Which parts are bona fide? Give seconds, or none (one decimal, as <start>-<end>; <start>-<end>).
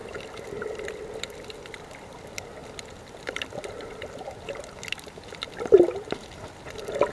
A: 0.0-7.1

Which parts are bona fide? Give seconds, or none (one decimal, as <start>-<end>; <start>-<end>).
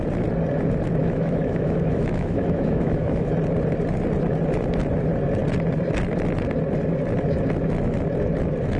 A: 0.0-1.0; 3.3-8.8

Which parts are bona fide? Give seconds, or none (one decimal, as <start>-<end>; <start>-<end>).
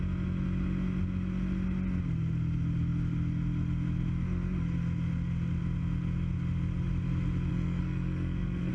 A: 0.0-7.5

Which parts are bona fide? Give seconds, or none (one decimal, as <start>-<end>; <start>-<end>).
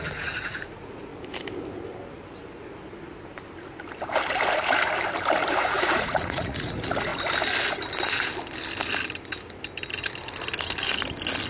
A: 1.1-5.5; 7.1-11.5